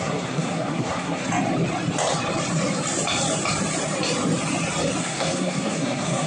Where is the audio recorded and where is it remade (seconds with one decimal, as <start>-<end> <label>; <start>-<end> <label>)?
0.0-1.2 remade; 1.2-5.0 recorded; 5.0-6.3 remade